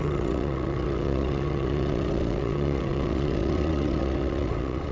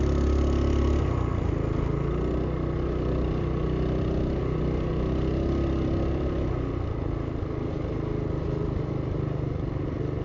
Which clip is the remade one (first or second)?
first